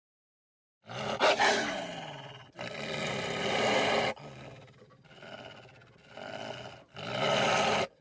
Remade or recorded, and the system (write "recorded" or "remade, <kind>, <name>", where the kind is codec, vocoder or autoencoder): recorded